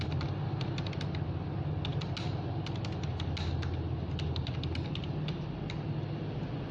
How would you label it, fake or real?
real